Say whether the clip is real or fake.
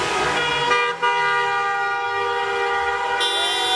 real